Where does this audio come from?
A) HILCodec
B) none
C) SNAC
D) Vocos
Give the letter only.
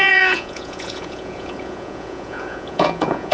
D